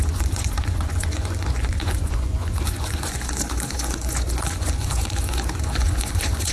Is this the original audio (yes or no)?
no